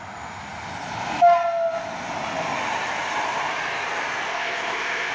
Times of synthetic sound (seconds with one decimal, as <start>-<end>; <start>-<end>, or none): 4.3-5.1